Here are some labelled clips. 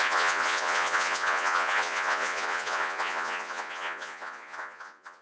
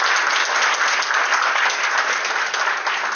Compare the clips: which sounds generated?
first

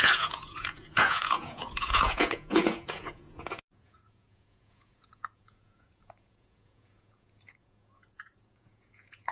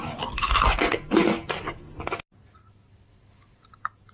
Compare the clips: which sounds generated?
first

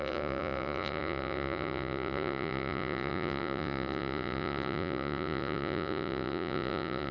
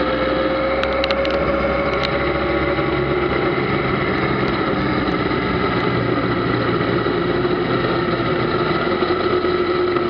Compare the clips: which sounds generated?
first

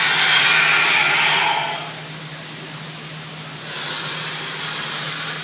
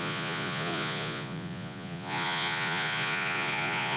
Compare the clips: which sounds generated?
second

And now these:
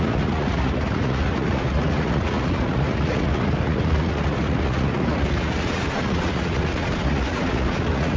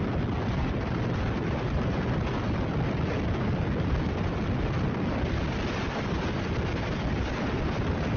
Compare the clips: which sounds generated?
first